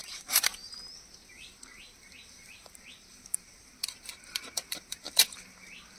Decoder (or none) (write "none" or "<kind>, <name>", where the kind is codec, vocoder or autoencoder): vocoder, BigVGAN v2